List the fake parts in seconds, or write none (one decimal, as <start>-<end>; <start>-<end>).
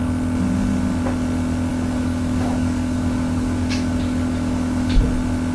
1.7-5.0